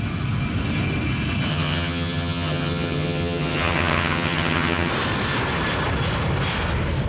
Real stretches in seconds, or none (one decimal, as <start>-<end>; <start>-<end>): 0.0-1.5; 4.9-7.1